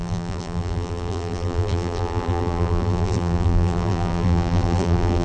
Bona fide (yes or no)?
no